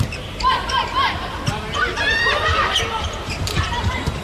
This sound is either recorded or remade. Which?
remade